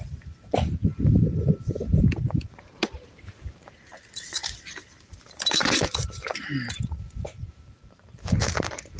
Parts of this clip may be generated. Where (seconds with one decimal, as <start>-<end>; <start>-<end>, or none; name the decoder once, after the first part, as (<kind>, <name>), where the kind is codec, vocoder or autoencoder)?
0.0-9.0 (vocoder, BigVGAN v2)